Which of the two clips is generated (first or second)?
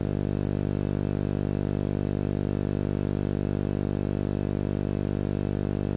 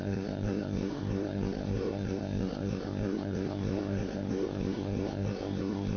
second